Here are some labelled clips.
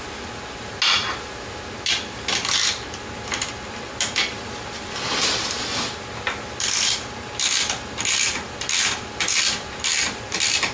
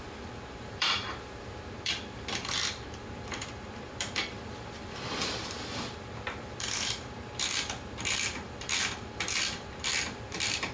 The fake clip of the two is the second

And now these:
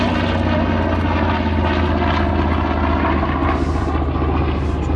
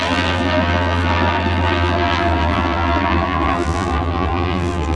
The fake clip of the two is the second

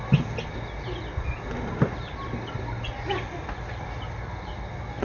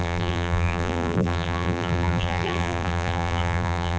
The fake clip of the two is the second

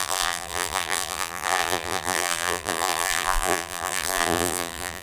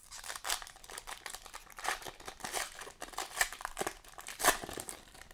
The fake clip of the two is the first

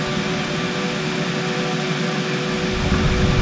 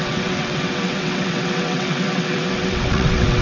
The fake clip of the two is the second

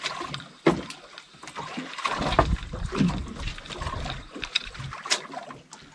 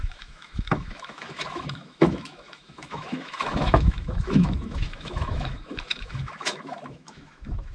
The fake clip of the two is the second